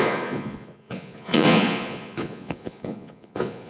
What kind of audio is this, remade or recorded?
remade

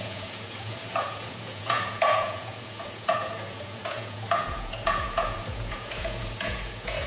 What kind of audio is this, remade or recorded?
remade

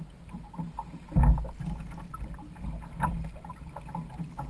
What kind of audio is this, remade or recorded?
recorded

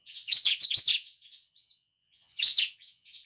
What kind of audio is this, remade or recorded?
remade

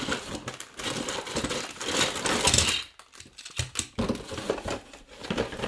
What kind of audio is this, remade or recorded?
recorded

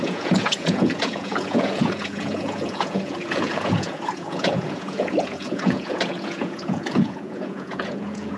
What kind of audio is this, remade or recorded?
remade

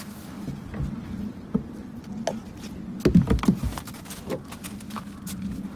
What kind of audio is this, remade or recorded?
recorded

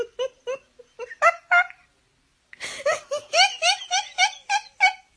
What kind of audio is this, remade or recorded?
recorded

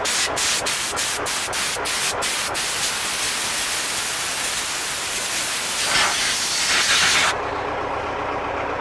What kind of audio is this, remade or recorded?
recorded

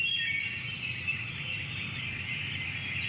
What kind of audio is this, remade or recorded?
recorded